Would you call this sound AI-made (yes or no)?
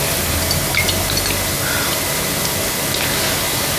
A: no